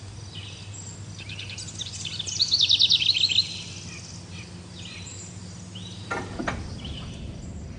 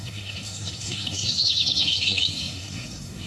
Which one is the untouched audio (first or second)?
first